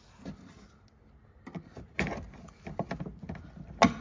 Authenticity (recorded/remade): recorded